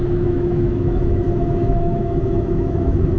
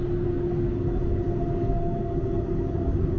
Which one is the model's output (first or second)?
first